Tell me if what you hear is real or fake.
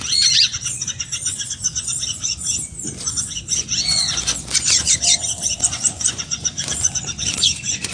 fake